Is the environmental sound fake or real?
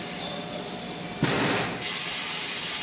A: real